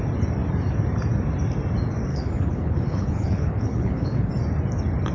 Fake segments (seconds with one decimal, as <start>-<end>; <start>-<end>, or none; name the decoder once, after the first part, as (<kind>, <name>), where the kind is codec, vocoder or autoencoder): 2.1-4.3 (codec, HILCodec)